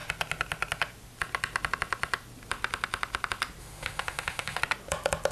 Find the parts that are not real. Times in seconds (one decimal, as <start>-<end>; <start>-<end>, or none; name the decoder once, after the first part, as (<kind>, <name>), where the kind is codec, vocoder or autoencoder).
3.6-4.6 (autoencoder, DAC-VAE)